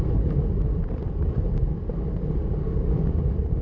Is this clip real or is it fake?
real